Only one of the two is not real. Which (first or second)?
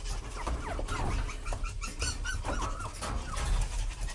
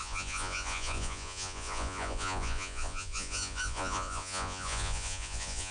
second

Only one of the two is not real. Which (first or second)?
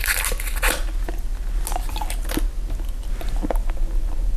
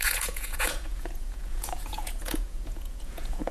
second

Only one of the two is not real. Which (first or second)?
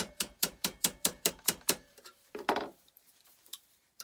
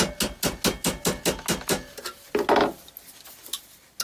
first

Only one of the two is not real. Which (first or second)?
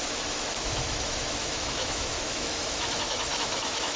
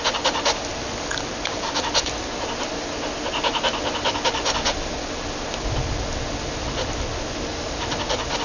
first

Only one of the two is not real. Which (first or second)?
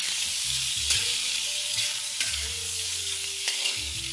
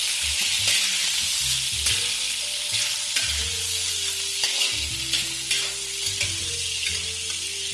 first